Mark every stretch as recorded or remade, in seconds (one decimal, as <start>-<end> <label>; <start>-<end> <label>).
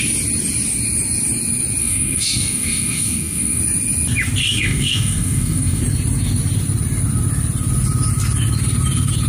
0.0-1.8 recorded; 1.8-3.6 remade; 3.6-4.4 recorded; 4.4-5.8 remade; 5.8-9.3 recorded